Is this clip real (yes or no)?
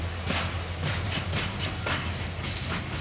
yes